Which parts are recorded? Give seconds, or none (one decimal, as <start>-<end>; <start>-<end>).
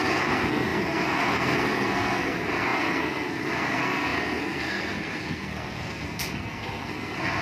none